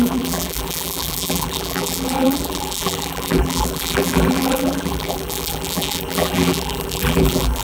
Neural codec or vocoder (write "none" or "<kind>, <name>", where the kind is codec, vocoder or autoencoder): vocoder, BigVGAN v2